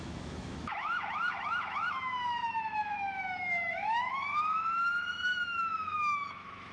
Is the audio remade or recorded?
remade